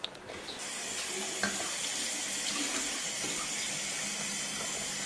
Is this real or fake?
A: real